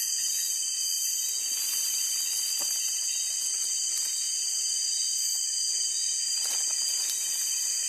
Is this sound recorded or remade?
recorded